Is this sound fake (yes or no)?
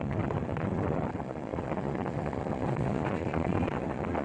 yes